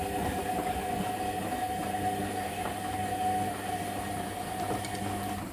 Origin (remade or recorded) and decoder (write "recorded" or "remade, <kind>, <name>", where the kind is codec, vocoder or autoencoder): recorded